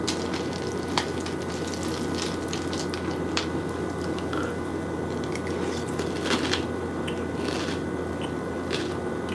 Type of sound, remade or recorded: recorded